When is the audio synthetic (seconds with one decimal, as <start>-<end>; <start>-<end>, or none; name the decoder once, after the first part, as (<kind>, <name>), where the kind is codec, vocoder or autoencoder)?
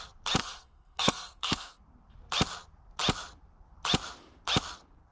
0.4-1.8 (codec, SNAC)